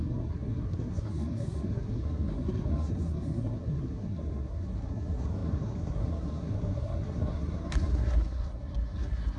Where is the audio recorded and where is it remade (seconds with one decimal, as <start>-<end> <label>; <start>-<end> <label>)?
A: 0.0-9.4 remade